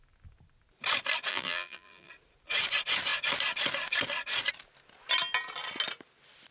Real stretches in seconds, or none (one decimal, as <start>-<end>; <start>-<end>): 0.0-1.3; 2.1-6.5